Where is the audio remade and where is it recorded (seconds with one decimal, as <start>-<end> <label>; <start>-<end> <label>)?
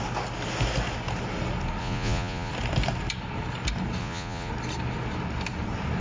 0.0-1.8 recorded; 1.8-2.5 remade; 2.5-4.0 recorded; 4.0-4.5 remade; 4.5-6.0 recorded